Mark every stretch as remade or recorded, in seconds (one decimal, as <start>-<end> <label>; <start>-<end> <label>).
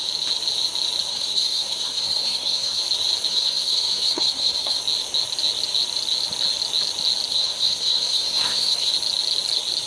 0.0-1.1 recorded; 1.1-2.8 remade; 2.8-3.3 recorded; 3.3-4.8 remade; 4.8-7.3 recorded; 7.3-8.9 remade; 8.9-9.9 recorded